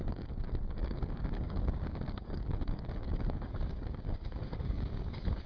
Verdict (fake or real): fake